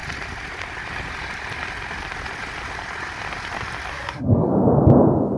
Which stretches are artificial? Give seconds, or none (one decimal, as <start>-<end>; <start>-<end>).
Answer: 3.9-4.5